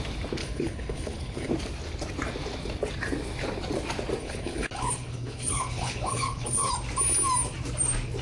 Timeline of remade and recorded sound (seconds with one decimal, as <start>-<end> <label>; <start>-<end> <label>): 0.0-0.4 recorded; 0.4-1.5 remade; 1.5-4.2 recorded; 4.2-6.7 remade; 6.7-8.2 recorded